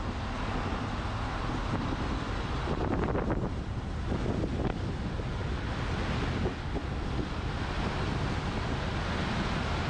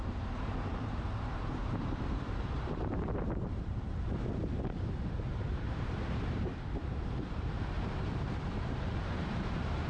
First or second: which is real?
first